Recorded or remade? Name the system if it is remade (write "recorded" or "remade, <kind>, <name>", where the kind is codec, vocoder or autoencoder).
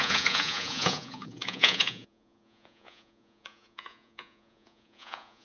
remade, vocoder, Vocos